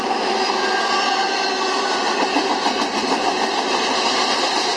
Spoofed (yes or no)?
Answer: no